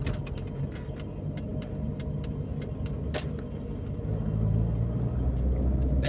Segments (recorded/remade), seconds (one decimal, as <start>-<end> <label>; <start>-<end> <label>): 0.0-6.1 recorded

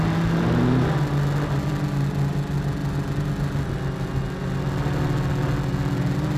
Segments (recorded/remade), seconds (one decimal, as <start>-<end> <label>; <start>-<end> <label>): 0.0-6.4 recorded

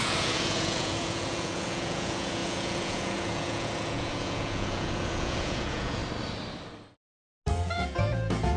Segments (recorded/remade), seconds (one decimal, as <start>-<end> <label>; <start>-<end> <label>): 0.0-6.0 remade; 6.0-7.6 recorded; 7.6-8.6 remade